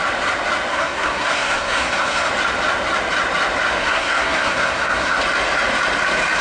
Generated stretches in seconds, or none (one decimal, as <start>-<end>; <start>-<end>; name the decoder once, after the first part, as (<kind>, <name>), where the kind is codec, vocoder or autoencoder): 0.7-2.3 (codec, SNAC); 3.8-5.2